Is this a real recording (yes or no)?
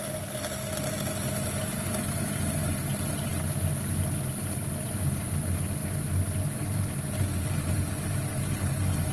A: yes